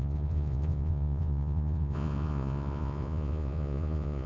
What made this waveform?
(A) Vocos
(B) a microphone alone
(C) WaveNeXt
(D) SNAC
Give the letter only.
A